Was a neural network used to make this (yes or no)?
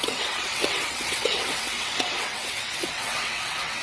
yes